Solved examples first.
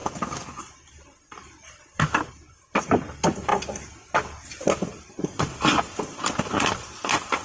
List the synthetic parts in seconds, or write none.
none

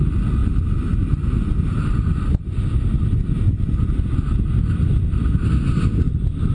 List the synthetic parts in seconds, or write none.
none

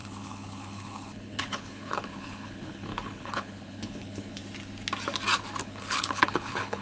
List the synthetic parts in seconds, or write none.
0.0-4.4 (codec, HILCodec); 5.6-6.8

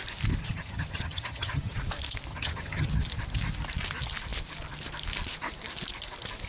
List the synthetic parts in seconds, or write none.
0.4-1.8 (vocoder, HiFi-GAN); 2.3-2.9

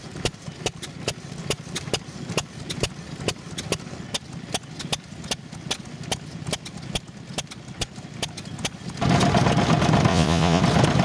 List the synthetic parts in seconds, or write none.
10.1-10.6 (vocoder, Vocos)

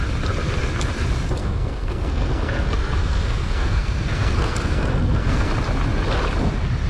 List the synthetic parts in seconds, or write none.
1.4-5.5 (codec, SNAC)